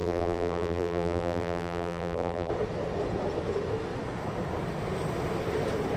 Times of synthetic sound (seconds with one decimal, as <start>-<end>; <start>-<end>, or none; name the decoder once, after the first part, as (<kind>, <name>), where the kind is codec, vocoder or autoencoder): 0.0-2.5 (vocoder, BigVGAN v2)